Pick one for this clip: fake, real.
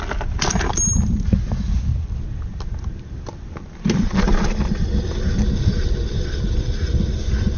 real